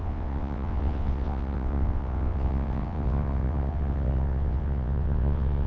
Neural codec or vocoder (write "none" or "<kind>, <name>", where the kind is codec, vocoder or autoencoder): vocoder, WaveNeXt